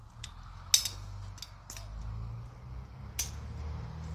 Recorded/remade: recorded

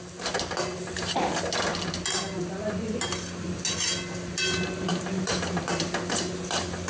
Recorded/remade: recorded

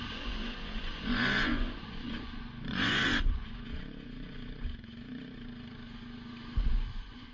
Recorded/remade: remade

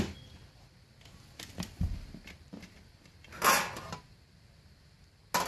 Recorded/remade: recorded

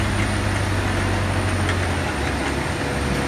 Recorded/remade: recorded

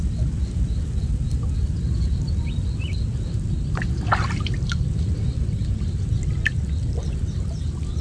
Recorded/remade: recorded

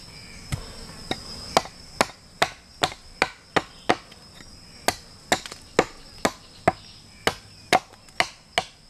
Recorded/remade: recorded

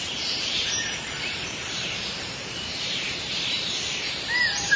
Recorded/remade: remade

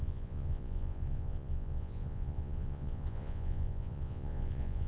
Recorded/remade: remade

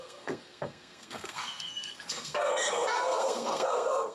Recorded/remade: remade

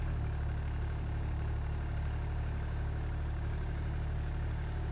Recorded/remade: remade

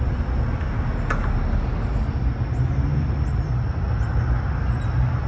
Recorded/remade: recorded